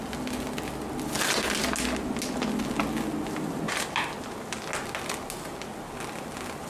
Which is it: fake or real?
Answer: real